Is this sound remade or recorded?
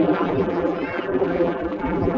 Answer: remade